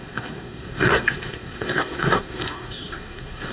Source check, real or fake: fake